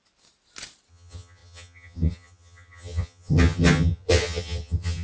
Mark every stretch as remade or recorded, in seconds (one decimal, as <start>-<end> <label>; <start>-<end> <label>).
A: 0.0-0.9 recorded; 0.9-5.0 remade